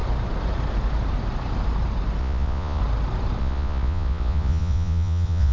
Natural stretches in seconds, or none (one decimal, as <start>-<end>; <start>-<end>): 0.0-2.2; 2.8-3.4